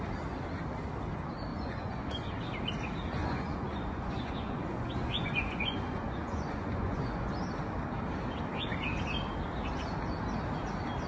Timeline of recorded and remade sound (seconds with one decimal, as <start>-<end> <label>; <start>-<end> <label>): 0.0-1.5 recorded; 1.5-2.3 remade; 2.3-3.2 recorded; 3.2-7.3 remade; 7.3-11.1 recorded